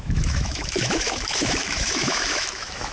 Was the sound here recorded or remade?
remade